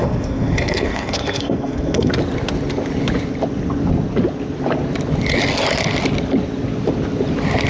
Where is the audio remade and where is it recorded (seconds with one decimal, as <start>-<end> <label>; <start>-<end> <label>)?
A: 0.0-2.1 remade; 2.1-7.7 recorded